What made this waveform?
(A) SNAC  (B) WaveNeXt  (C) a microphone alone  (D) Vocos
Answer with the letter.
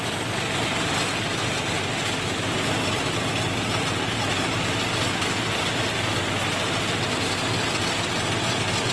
C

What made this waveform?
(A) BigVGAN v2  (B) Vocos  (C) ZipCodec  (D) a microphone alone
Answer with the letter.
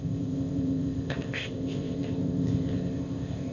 C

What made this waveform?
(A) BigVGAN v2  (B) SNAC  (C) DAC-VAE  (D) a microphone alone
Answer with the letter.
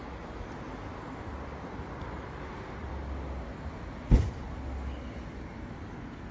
D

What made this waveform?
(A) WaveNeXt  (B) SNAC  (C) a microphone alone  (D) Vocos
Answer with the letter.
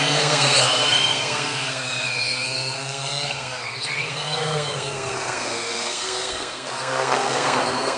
B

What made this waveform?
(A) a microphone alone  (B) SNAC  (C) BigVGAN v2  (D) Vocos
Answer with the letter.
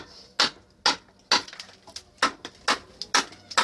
A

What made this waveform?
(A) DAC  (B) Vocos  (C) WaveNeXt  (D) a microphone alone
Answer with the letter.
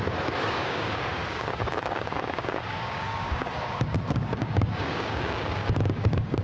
A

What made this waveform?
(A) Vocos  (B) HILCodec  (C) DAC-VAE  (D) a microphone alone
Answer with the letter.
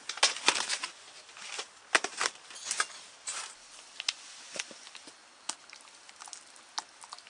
D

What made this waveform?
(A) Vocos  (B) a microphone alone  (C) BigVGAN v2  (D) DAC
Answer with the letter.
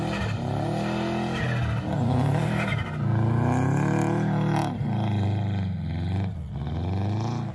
B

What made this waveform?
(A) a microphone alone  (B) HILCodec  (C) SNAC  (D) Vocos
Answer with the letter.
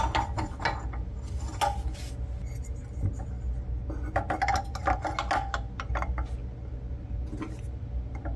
A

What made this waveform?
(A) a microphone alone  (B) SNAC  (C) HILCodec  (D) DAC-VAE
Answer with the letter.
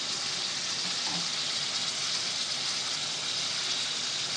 A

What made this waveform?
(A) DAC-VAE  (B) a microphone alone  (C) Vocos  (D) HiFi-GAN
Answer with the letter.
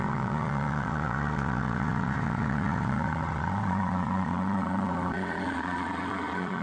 C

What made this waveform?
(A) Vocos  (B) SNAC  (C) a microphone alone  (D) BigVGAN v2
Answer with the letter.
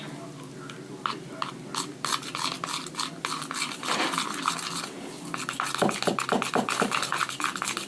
C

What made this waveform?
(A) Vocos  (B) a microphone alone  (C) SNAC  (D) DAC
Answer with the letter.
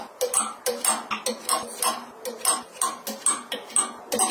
B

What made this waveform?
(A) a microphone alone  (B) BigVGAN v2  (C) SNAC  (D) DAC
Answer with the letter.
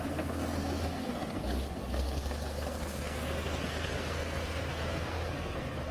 C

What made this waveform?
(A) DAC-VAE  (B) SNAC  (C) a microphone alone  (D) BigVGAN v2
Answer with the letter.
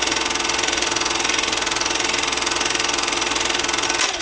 C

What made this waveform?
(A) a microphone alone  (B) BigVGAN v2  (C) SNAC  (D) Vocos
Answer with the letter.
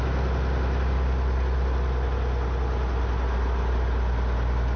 A